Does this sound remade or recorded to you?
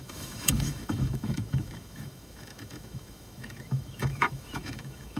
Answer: remade